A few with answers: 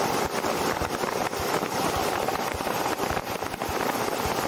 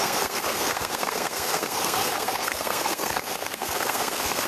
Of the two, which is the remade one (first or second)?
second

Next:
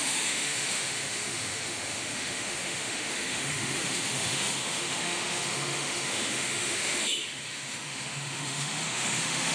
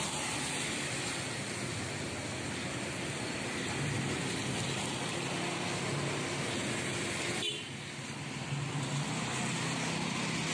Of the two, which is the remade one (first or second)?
first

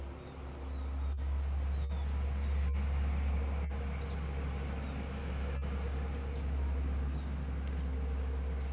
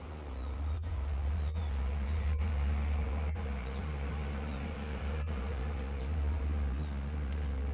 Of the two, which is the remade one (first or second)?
second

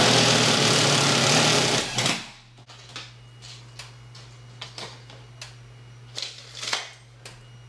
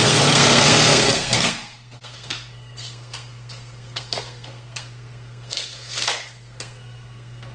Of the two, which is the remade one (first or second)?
second